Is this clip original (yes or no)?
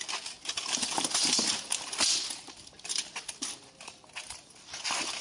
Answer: yes